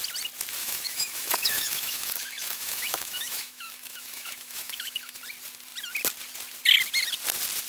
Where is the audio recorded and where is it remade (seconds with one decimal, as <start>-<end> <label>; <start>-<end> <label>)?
0.0-0.6 recorded; 0.6-5.2 remade; 5.2-7.7 recorded